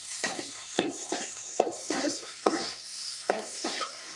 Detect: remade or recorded remade